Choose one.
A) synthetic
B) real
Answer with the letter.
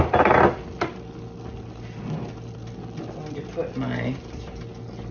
B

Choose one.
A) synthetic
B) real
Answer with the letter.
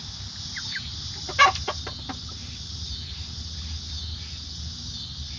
B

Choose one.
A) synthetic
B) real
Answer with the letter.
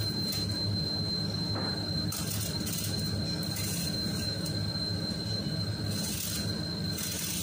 B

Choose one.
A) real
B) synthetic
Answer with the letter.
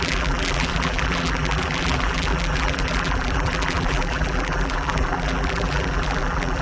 B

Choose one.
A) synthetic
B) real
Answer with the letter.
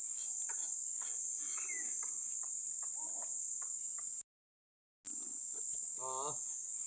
B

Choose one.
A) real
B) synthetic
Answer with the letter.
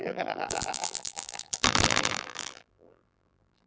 B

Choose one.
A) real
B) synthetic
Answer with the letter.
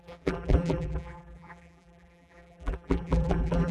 B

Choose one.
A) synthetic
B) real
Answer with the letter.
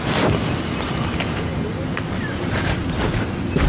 B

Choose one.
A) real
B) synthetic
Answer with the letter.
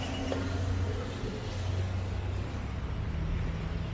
A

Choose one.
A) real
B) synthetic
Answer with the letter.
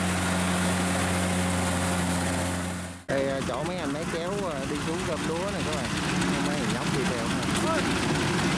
A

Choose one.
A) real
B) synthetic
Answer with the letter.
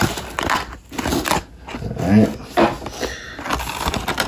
A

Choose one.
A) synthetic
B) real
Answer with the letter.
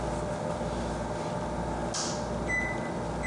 B